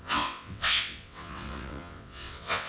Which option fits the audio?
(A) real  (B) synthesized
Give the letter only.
B